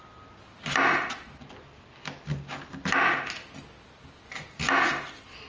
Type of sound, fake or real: real